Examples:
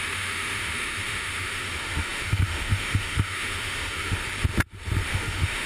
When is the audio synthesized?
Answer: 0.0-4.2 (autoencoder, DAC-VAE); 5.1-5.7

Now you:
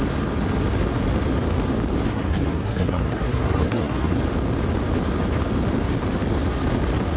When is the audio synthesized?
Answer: 2.1-4.2 (codec, SNAC)